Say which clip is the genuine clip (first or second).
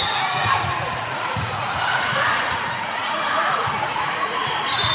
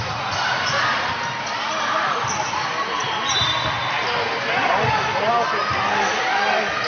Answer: second